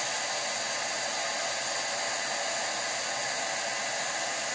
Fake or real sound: real